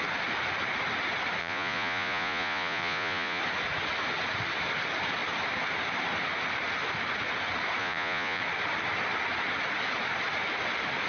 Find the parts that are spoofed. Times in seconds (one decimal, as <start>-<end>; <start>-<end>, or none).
1.4-3.4; 7.8-8.4